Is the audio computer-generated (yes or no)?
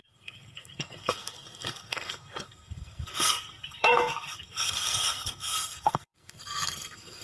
yes